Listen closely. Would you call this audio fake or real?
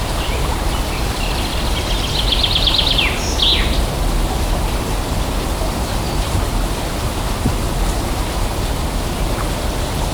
real